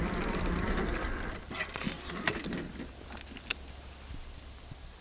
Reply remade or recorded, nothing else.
recorded